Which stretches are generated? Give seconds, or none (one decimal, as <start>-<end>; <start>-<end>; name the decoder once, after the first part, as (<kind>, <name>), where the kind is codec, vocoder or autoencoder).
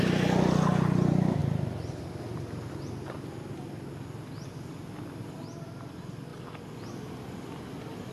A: none